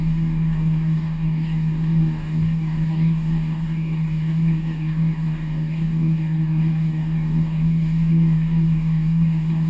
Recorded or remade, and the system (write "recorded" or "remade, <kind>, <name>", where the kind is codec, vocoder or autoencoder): remade, codec, DAC